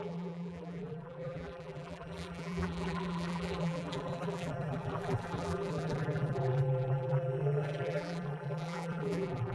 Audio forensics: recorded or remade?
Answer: remade